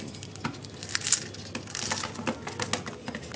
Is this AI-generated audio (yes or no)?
no